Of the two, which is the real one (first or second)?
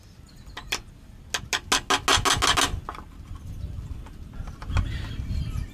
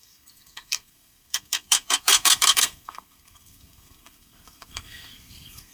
first